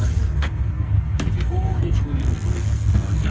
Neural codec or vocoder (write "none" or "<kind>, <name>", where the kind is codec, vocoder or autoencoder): codec, SNAC